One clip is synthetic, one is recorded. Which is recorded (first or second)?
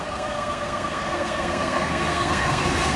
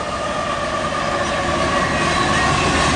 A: second